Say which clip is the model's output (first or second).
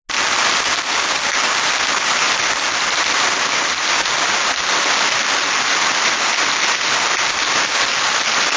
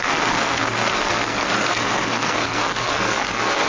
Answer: second